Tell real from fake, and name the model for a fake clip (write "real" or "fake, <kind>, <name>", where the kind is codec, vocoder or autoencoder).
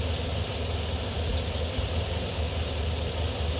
real